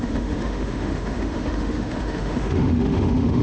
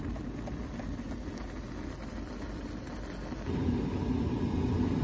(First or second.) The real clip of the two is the second